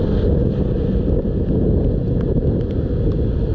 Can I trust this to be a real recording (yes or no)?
yes